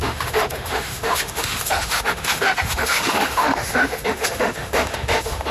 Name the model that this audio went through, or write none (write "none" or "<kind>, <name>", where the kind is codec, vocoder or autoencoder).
autoencoder, DAC-VAE